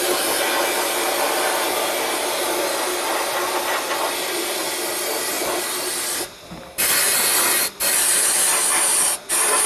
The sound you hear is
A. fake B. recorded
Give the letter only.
B